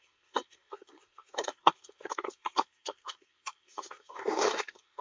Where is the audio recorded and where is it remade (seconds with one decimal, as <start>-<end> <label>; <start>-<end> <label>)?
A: 0.0-5.0 remade